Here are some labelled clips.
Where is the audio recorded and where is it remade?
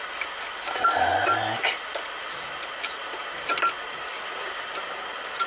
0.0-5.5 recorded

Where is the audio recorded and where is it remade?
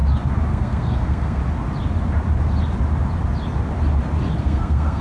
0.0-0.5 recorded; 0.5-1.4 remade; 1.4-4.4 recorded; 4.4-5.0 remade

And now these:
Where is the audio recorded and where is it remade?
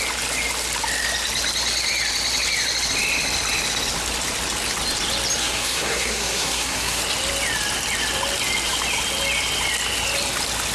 0.0-5.4 recorded; 5.4-7.0 remade; 7.0-10.7 recorded